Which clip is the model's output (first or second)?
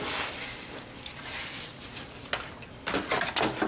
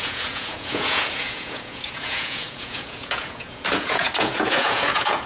second